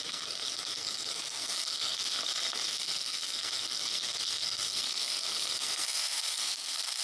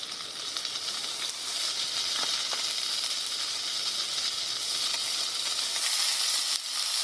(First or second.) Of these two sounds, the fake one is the first